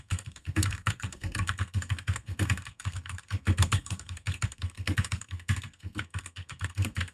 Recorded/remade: remade